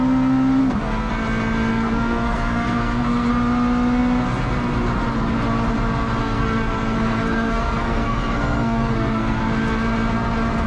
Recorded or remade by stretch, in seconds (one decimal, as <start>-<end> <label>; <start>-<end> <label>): 0.0-0.6 recorded; 0.6-1.1 remade; 1.1-1.7 recorded; 1.7-3.3 remade; 3.3-6.2 recorded; 6.2-9.4 remade; 9.4-10.7 recorded